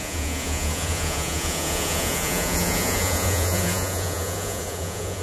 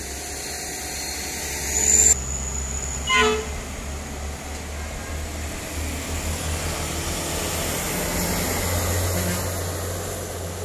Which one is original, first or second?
second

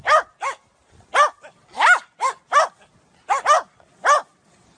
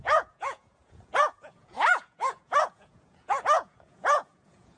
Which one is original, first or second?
first